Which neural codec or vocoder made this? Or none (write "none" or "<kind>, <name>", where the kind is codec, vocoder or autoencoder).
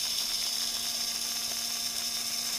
none